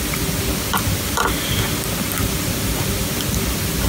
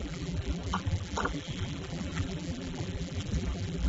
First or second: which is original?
first